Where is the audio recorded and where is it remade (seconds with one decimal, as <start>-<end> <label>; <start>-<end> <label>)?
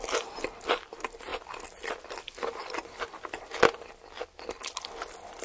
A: 0.0-1.3 recorded; 1.3-1.9 remade; 1.9-5.4 recorded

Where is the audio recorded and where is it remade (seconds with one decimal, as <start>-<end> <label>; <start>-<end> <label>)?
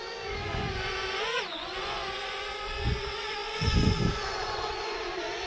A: 0.0-5.5 remade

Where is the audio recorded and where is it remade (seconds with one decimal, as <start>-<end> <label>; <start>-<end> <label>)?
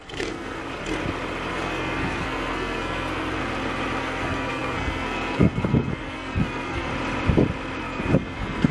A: 0.0-0.6 remade; 0.6-1.5 recorded; 1.5-3.4 remade; 3.4-4.0 recorded; 4.0-6.9 remade; 6.9-7.8 recorded; 7.8-8.7 remade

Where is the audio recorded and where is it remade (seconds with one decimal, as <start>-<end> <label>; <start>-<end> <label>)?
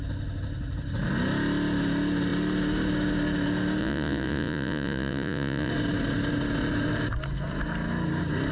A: 0.0-3.8 recorded; 3.8-5.7 remade; 5.7-8.5 recorded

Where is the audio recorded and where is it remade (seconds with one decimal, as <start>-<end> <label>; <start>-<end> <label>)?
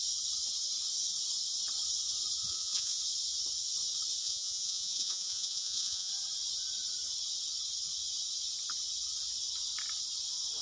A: 0.0-2.4 recorded; 2.4-3.0 remade; 3.0-4.2 recorded; 4.2-6.1 remade; 6.1-10.6 recorded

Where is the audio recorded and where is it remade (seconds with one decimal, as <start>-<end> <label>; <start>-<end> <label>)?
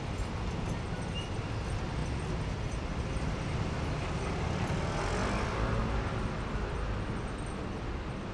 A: 0.0-8.3 recorded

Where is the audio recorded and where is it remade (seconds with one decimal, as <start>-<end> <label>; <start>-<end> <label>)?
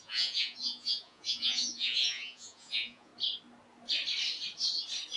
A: 0.0-3.1 remade; 3.1-5.2 recorded